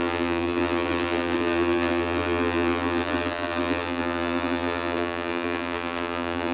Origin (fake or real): fake